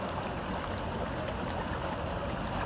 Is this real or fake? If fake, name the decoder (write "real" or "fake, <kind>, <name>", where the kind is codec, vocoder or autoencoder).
real